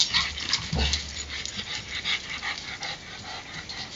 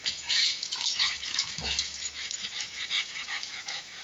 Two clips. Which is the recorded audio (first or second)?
first